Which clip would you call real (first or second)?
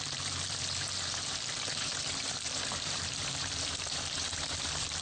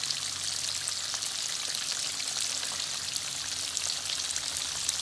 second